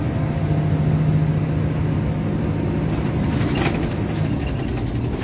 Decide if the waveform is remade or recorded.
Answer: recorded